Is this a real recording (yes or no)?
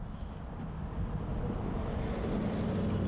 yes